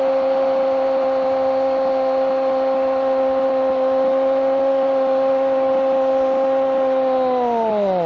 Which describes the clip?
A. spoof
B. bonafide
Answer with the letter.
B